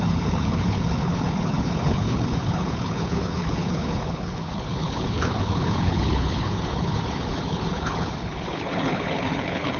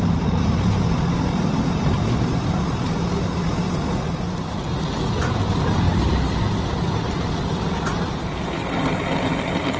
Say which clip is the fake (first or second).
first